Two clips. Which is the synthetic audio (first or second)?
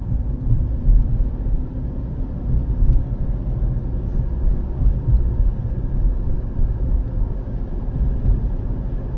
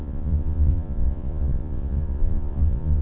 second